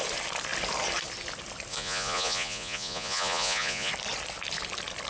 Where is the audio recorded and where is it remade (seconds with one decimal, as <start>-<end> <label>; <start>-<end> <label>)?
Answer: 0.0-1.7 recorded; 1.7-3.9 remade; 3.9-5.1 recorded